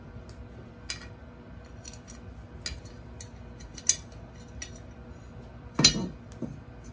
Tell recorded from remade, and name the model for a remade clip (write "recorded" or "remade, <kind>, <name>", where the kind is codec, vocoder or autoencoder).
recorded